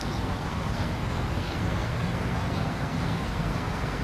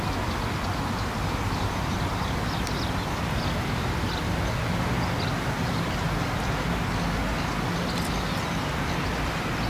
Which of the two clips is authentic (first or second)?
second